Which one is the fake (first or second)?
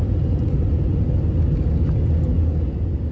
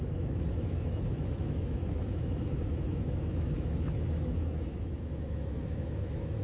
second